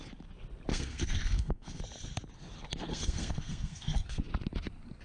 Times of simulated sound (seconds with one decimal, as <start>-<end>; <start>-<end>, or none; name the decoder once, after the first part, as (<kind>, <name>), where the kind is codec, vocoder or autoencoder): 0.7-1.8 (codec, SNAC); 2.9-4.2